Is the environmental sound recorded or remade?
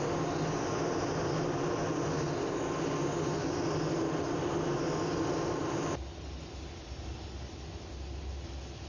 recorded